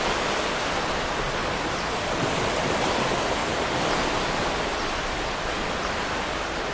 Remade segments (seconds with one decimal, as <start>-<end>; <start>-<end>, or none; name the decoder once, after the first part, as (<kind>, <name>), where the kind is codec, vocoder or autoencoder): 1.4-2.2 (vocoder, BigVGAN v2); 3.4-6.3